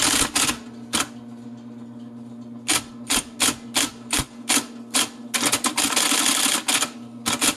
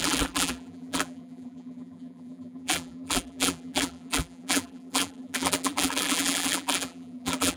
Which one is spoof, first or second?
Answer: second